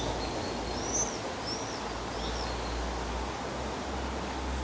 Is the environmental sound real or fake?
real